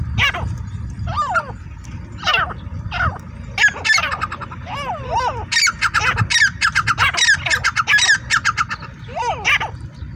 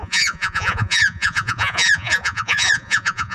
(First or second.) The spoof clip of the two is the second